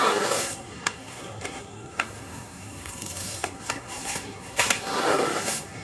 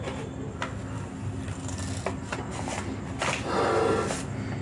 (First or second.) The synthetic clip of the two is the first